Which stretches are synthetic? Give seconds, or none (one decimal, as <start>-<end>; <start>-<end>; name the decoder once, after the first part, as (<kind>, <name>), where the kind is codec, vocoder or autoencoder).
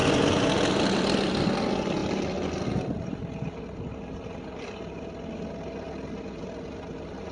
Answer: none